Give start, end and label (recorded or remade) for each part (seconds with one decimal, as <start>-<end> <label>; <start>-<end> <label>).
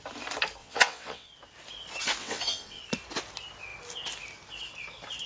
0.0-0.6 recorded; 0.6-1.3 remade; 1.3-2.2 recorded; 2.2-2.8 remade; 2.8-5.3 recorded